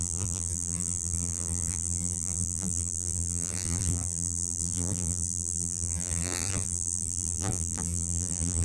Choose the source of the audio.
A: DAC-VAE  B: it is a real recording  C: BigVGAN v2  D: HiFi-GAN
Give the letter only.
C